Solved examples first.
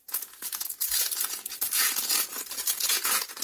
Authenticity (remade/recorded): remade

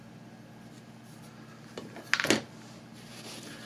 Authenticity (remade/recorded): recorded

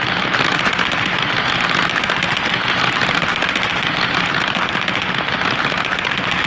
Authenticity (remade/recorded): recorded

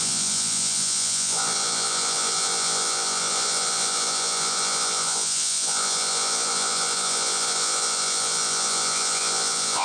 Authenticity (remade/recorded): remade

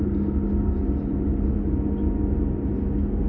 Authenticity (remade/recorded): recorded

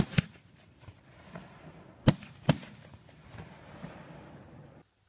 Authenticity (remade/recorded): recorded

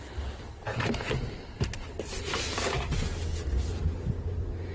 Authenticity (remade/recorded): recorded